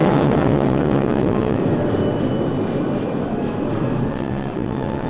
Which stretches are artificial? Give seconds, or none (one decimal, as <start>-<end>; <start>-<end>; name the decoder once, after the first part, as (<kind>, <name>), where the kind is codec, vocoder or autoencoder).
0.0-1.6 (vocoder, WaveNeXt); 4.1-5.1